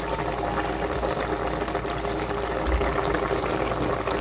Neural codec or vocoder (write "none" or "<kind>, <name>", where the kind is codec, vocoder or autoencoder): none